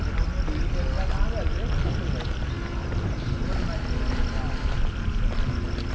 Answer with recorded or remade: recorded